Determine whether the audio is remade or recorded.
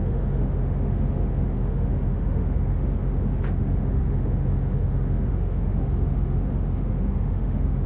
remade